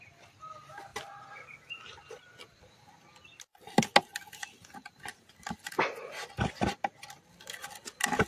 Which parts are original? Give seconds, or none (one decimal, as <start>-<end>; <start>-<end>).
0.0-8.3

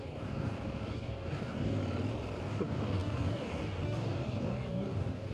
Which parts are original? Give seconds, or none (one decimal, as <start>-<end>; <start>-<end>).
1.8-2.4

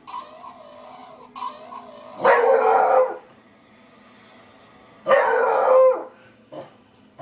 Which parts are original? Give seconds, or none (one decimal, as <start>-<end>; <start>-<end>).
0.0-6.0; 6.6-7.2

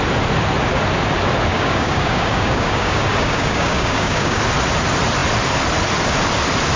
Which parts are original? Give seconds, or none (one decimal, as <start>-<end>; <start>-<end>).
0.0-1.5; 4.4-6.8

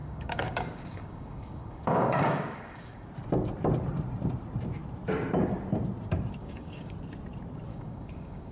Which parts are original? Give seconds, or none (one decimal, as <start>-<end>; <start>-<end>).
3.1-6.4; 6.9-7.7

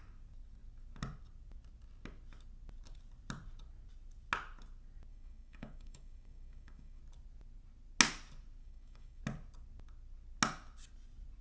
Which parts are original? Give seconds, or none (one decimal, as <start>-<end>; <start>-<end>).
0.0-5.1; 7.0-8.6; 9.2-11.4

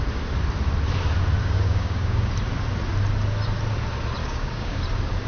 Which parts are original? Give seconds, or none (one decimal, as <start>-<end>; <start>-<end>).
0.0-1.4; 2.3-4.2; 4.8-5.3